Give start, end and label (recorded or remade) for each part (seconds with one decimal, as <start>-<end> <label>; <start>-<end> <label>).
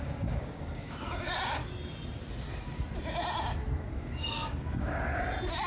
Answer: 0.0-1.6 remade; 1.6-3.8 recorded; 3.8-5.1 remade; 5.1-5.7 recorded